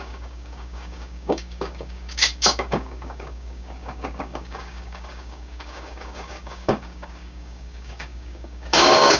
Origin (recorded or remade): remade